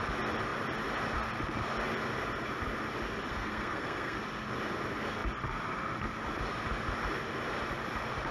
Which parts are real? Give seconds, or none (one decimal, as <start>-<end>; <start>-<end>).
0.0-3.3; 4.2-8.3